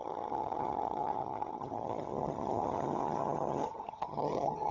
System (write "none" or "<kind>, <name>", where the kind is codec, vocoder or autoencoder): vocoder, HiFi-GAN